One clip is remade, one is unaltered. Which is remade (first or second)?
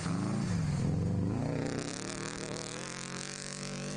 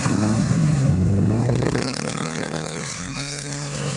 second